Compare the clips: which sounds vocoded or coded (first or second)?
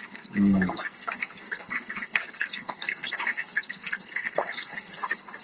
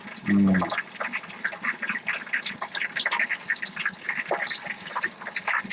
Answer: first